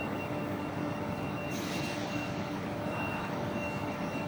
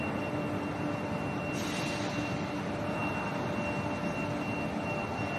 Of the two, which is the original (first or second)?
second